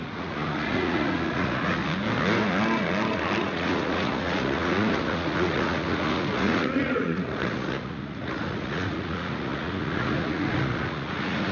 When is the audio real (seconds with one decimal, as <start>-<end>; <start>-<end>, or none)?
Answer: 1.8-3.4